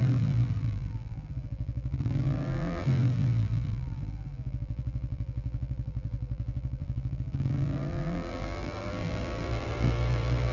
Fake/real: fake